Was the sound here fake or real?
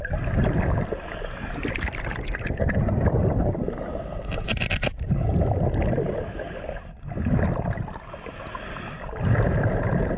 real